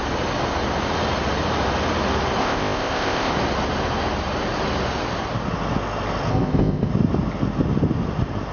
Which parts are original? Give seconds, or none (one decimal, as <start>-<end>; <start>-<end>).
0.0-2.4; 3.3-6.3; 6.9-8.5